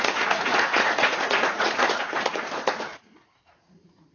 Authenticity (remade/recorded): remade